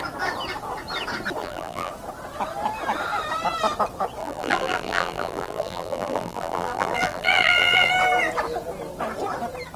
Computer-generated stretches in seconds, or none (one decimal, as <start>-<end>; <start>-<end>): 1.4-1.9; 4.2-7.9